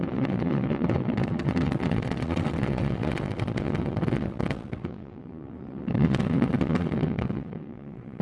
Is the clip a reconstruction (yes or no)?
yes